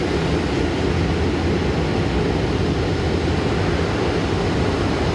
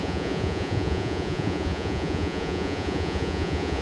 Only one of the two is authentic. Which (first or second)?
first